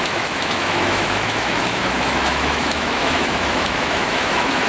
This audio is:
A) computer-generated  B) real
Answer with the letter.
A